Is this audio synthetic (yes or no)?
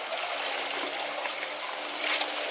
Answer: no